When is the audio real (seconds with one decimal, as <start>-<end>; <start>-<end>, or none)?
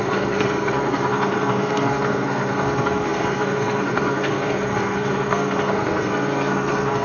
none